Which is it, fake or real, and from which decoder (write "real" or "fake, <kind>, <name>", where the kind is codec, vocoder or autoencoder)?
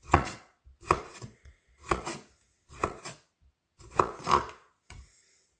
fake, vocoder, Vocos